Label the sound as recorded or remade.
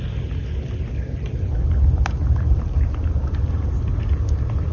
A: recorded